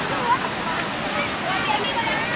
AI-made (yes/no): no